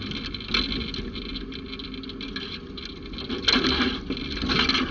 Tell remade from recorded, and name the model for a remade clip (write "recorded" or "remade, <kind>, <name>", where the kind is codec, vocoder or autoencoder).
recorded